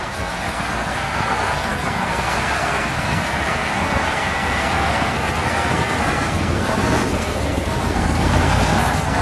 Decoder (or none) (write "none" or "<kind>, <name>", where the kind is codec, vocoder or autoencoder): codec, SNAC